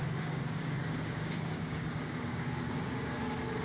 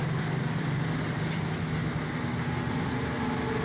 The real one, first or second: second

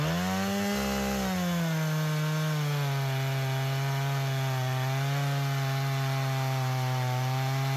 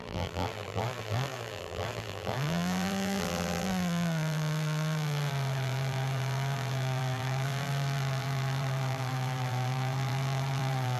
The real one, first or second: first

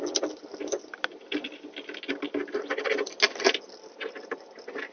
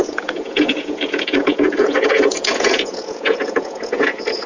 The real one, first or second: first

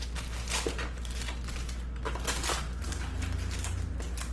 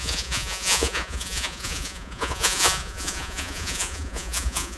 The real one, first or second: first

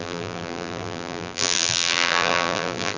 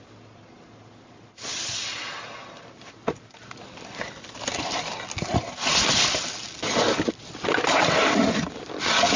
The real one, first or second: second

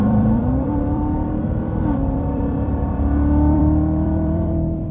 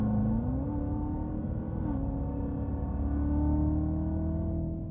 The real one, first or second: second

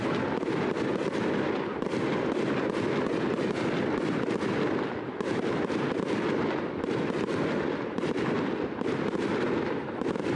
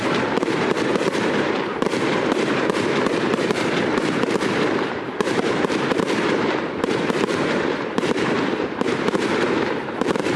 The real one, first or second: first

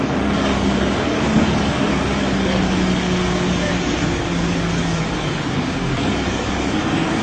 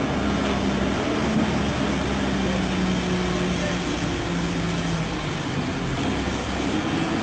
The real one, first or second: second